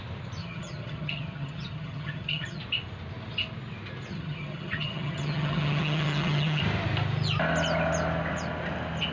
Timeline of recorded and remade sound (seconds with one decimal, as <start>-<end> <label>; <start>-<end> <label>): 0.0-0.4 recorded; 0.4-2.6 remade; 2.6-4.1 recorded; 4.1-6.6 remade; 6.6-9.1 recorded

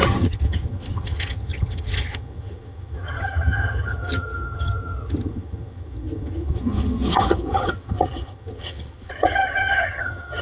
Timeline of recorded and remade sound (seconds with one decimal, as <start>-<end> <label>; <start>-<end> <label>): 0.0-10.4 remade

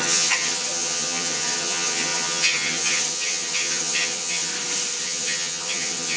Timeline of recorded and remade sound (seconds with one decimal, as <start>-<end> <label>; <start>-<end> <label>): 0.0-4.5 remade; 4.5-5.0 recorded; 5.0-6.2 remade